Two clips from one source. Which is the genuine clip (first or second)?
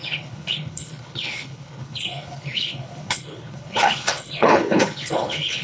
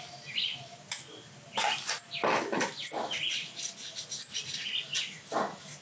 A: second